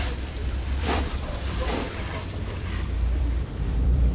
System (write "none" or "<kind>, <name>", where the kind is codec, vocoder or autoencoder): vocoder, BigVGAN v2